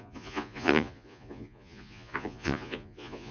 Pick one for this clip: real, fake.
fake